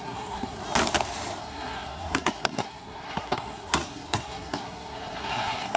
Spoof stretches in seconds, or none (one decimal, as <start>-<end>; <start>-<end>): 0.0-0.6; 1.4-5.8